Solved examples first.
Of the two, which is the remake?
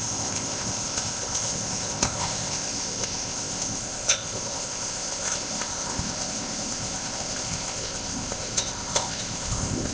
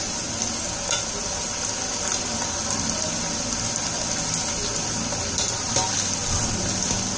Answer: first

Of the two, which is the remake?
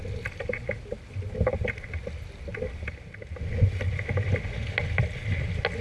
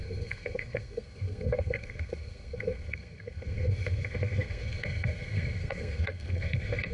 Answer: second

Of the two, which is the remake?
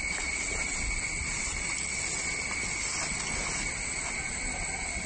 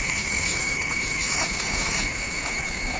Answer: second